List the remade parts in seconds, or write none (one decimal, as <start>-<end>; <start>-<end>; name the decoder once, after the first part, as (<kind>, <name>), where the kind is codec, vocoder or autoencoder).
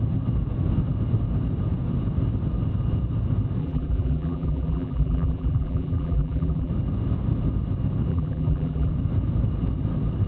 3.6-6.7 (vocoder, BigVGAN v2); 8.1-8.9